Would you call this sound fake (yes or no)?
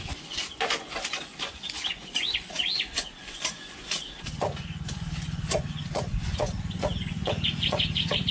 yes